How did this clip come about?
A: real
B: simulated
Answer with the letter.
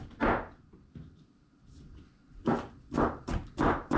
A